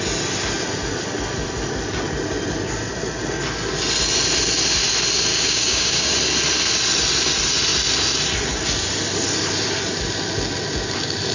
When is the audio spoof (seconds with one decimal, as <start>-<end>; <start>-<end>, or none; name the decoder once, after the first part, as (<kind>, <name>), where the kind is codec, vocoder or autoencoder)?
5.3-6.1 (codec, DAC)